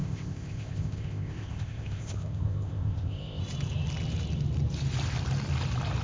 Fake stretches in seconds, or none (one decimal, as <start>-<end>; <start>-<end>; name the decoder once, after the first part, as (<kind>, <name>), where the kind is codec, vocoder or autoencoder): 0.0-3.4 (codec, ZipCodec)